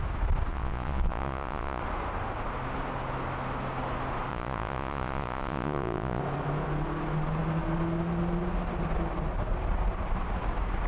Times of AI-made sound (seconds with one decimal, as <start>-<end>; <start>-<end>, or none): 0.5-1.8; 4.3-6.2

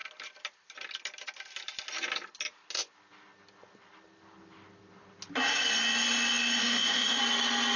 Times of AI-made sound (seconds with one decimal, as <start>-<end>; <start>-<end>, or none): 6.6-7.2

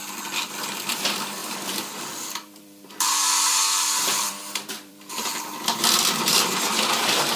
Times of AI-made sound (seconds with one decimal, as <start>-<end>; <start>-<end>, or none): 1.4-5.8

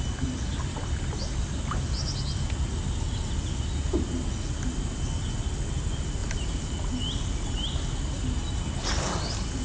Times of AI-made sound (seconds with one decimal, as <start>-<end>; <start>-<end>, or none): 6.2-6.7